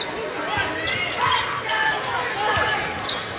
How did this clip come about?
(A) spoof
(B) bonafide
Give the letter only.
B